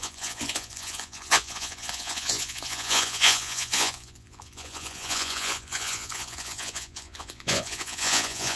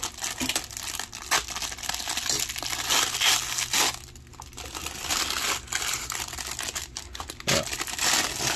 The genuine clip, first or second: second